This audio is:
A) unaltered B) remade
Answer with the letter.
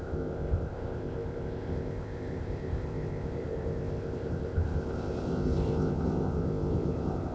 B